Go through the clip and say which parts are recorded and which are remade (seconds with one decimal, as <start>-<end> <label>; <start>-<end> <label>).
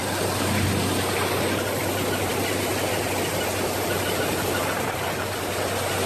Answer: 0.0-6.1 recorded